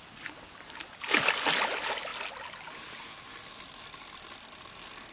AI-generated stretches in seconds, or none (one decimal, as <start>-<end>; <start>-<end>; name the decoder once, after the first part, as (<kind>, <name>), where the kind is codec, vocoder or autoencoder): none